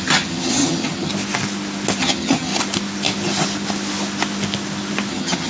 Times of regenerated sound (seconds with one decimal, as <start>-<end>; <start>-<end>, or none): 0.0-1.1; 2.0-2.5; 5.1-5.5